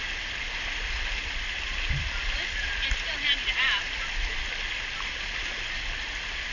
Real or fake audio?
real